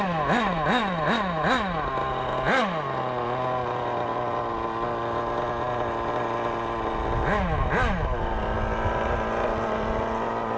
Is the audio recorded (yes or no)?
yes